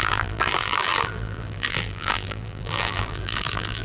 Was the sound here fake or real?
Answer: fake